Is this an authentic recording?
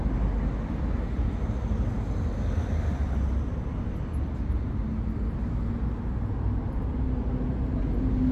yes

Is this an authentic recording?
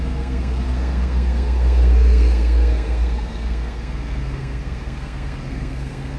no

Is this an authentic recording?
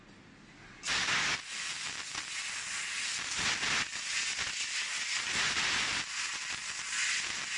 yes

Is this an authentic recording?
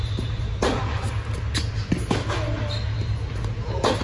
yes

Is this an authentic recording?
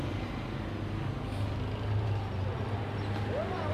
yes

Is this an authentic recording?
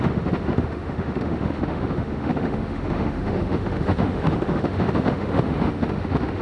no